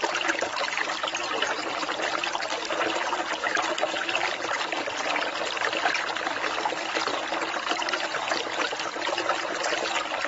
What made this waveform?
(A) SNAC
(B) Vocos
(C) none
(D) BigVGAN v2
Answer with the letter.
C